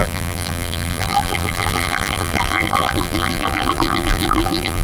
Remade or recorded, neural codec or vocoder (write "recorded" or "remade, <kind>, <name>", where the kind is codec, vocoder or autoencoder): remade, vocoder, BigVGAN v2